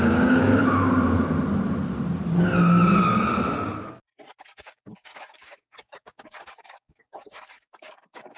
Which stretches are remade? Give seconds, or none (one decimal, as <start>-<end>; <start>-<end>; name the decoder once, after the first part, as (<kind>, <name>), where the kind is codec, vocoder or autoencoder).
0.0-0.5 (codec, DAC); 4.4-8.4